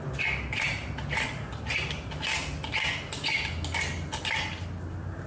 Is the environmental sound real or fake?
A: real